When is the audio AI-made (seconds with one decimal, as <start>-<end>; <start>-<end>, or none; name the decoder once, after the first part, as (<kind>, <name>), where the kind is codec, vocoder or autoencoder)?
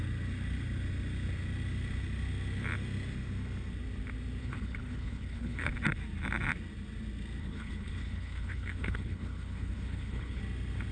4.4-5.7 (codec, HILCodec); 7.4-10.4